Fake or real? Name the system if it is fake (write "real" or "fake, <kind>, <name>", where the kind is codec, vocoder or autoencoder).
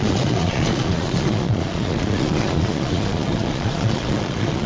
fake, vocoder, Vocos